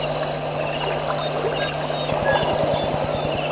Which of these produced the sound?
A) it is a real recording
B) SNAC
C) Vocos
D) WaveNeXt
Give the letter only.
A